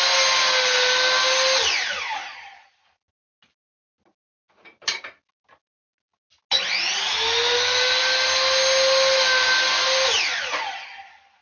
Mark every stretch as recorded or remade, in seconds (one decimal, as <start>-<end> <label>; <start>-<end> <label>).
0.0-11.4 recorded